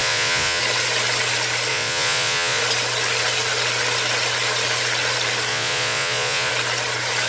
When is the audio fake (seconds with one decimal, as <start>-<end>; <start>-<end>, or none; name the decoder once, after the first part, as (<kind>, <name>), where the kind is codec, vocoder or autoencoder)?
0.0-0.6 (vocoder, Vocos); 1.7-2.6; 5.5-6.5